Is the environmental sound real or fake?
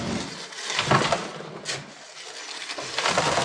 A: real